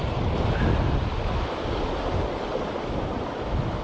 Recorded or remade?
recorded